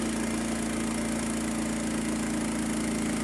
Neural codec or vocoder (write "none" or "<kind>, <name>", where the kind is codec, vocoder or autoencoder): none